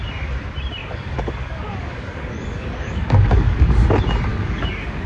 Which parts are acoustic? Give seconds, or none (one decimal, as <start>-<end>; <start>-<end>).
0.0-0.8; 3.9-4.3